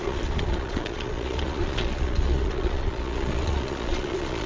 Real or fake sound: fake